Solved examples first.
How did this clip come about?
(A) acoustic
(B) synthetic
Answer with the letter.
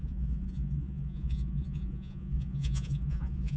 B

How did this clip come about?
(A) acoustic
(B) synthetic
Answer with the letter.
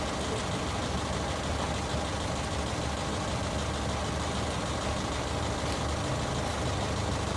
A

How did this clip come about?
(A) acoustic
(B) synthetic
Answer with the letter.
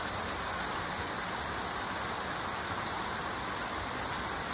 A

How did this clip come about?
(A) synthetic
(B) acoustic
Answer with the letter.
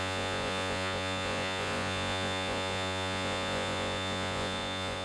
A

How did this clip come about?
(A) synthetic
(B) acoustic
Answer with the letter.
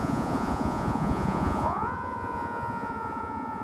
A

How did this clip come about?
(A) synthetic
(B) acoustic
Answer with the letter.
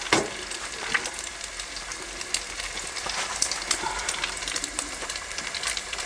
B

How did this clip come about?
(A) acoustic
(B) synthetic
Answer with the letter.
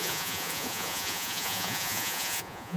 B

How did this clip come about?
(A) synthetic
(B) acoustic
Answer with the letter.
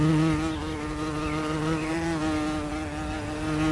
B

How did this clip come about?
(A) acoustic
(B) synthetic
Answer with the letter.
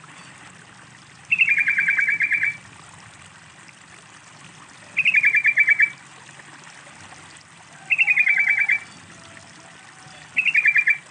A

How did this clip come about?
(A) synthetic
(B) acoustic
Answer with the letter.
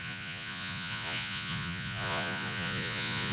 A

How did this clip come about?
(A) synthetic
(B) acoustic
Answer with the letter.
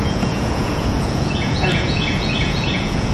A